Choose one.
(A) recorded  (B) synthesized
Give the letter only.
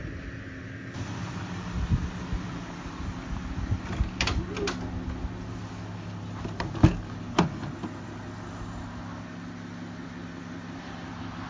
A